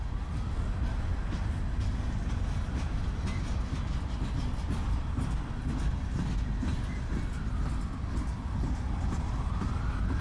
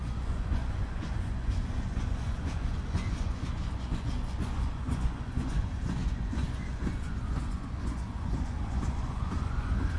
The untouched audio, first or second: first